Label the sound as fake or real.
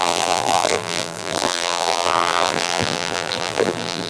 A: fake